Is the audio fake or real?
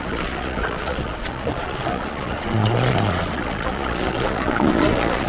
fake